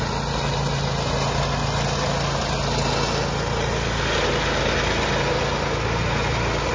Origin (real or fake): real